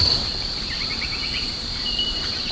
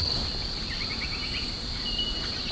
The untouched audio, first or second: second